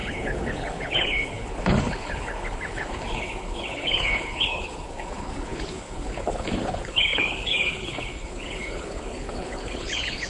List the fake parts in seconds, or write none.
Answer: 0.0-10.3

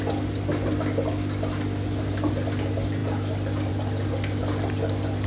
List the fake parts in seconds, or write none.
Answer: none

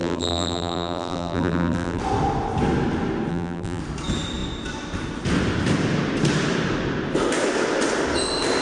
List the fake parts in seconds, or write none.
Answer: 0.0-2.0; 3.3-3.8

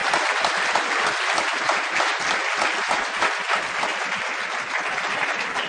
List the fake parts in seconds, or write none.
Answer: none

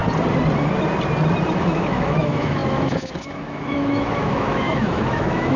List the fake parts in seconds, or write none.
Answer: 1.6-5.6

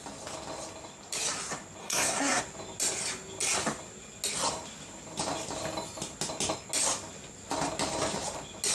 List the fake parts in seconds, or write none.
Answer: 1.8-2.4